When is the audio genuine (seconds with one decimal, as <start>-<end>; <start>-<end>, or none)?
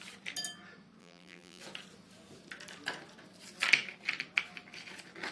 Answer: 0.0-1.0; 1.6-5.3